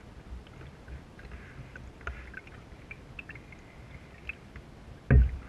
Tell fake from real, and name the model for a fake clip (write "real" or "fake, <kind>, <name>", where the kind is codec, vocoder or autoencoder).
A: real